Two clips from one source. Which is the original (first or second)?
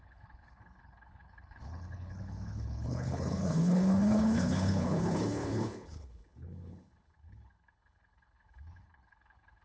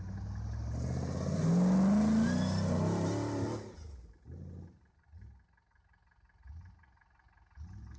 second